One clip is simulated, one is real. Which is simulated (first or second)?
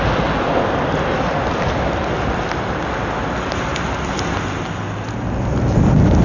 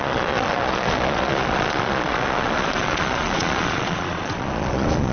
second